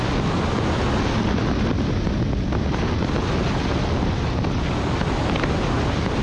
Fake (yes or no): no